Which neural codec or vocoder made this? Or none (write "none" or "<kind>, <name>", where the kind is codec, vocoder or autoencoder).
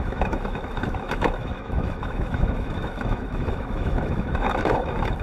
autoencoder, DAC-VAE